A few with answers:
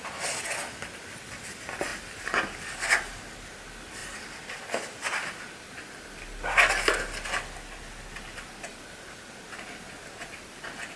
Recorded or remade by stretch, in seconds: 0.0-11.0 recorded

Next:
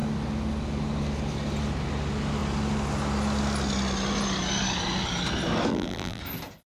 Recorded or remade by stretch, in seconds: 0.0-5.7 recorded; 5.7-6.2 remade; 6.2-6.7 recorded

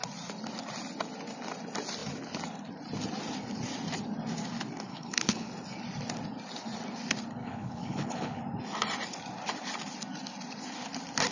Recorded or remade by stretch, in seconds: 0.0-4.9 recorded; 4.9-5.5 remade; 5.5-7.4 recorded; 7.4-8.4 remade; 8.4-11.3 recorded

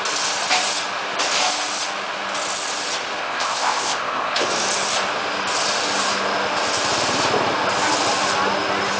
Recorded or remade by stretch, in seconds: 0.0-3.2 recorded; 3.2-4.5 remade; 4.5-9.0 recorded

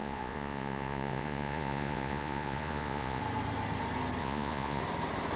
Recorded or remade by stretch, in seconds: 0.0-3.2 remade; 3.2-4.2 recorded; 4.2-4.8 remade; 4.8-5.4 recorded

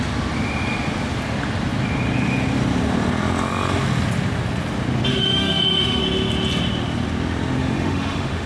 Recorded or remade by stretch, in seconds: 0.0-5.1 recorded; 5.1-6.0 remade; 6.0-7.6 recorded; 7.6-8.5 remade